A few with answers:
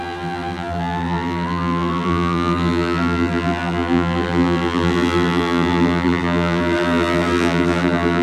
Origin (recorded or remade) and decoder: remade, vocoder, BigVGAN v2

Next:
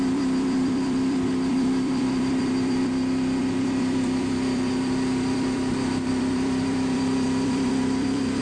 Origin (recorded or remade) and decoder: remade, vocoder, BigVGAN v2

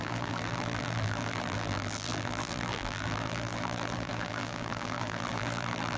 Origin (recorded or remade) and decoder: remade, vocoder, BigVGAN v2